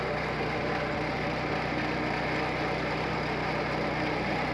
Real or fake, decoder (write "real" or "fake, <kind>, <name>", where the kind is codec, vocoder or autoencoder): real